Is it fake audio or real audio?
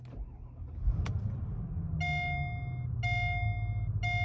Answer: real